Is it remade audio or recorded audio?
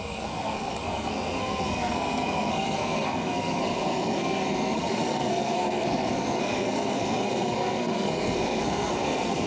remade